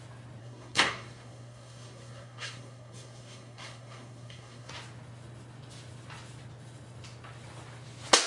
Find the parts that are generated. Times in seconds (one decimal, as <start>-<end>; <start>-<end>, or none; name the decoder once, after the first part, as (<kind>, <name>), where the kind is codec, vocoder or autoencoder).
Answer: 0.4-4.7 (codec, SNAC)